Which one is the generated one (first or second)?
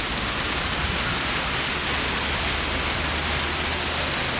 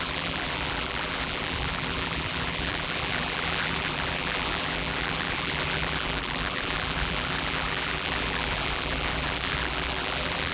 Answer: second